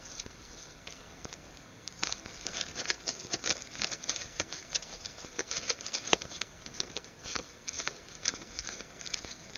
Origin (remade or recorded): remade